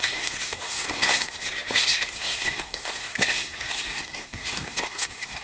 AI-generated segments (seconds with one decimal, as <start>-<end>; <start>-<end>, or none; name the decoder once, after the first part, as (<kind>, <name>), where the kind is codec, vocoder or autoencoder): 0.0-5.4 (codec, SNAC)